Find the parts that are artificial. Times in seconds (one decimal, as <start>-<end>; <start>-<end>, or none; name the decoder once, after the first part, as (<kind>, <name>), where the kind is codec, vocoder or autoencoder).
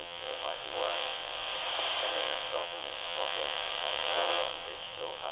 0.0-1.5 (vocoder, WaveNeXt); 2.1-5.3